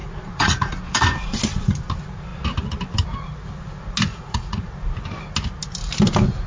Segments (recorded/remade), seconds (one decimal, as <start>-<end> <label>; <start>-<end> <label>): 0.0-0.7 remade; 0.7-4.1 recorded; 4.1-4.7 remade; 4.7-6.5 recorded

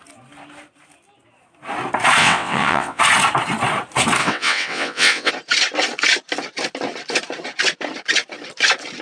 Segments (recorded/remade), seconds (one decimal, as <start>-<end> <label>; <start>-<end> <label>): 0.0-2.2 recorded; 2.2-3.0 remade; 3.0-4.2 recorded; 4.2-5.3 remade; 5.3-9.0 recorded

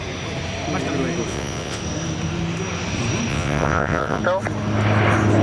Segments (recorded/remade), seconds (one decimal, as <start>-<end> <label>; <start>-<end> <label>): 0.0-1.3 recorded; 1.3-1.8 remade; 1.8-3.3 recorded; 3.3-4.2 remade; 4.2-5.4 recorded

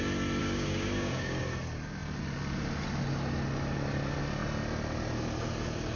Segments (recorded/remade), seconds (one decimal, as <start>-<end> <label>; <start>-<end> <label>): 0.0-0.4 recorded; 0.4-1.4 remade; 1.4-6.0 recorded

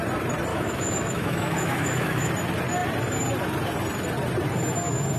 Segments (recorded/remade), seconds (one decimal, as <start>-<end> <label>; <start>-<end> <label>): 0.0-0.5 recorded; 0.5-2.3 remade; 2.3-5.2 recorded

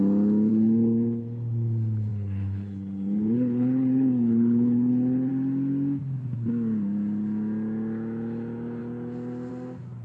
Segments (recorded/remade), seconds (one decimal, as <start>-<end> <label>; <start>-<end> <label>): 0.0-0.5 recorded; 0.5-1.2 remade; 1.2-2.1 recorded; 2.1-5.3 remade; 5.3-10.0 recorded

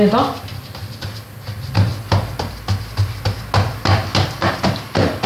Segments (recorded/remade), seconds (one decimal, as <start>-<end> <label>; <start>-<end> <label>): 0.0-5.3 recorded

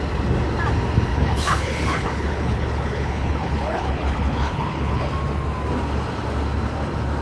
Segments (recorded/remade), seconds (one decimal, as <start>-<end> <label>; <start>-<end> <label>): 0.0-1.1 recorded; 1.1-5.1 remade; 5.1-7.2 recorded